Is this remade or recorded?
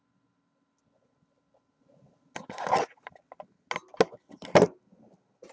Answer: recorded